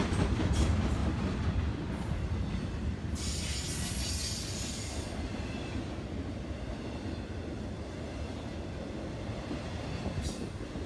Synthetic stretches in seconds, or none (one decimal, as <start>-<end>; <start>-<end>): none